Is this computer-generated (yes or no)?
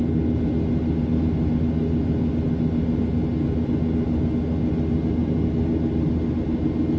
no